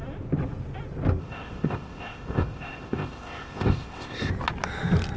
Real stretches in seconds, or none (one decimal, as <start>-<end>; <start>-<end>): 0.0-1.2; 4.3-5.2